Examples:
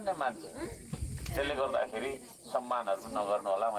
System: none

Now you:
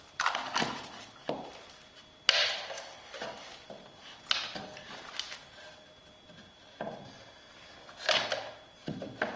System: none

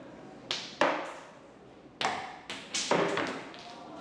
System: none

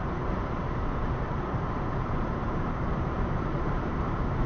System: vocoder, BigVGAN v2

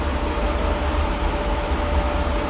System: none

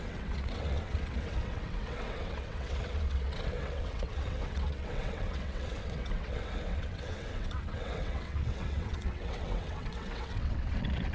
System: vocoder, WaveNeXt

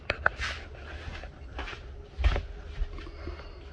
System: none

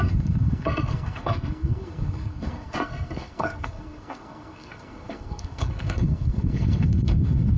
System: codec, SNAC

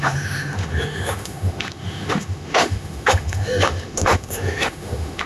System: autoencoder, DAC-VAE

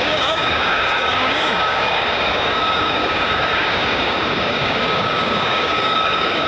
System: codec, DAC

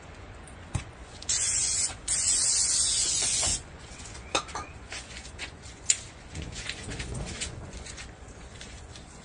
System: vocoder, Vocos